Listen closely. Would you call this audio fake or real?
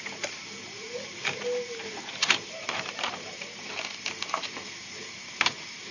fake